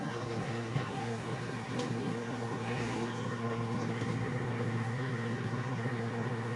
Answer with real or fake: fake